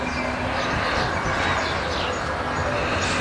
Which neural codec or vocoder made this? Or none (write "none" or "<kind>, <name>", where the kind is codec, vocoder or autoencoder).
none